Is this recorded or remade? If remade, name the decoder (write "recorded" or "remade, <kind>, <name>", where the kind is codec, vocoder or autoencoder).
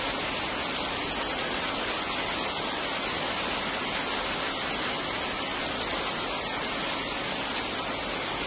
recorded